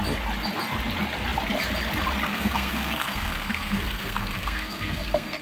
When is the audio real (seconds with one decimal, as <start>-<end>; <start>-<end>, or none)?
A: 0.0-2.3